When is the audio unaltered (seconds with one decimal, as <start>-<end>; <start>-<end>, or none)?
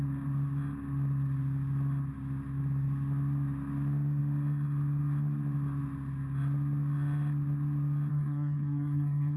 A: 0.0-8.1